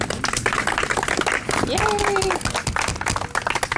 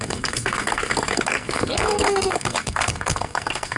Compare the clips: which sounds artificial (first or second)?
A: second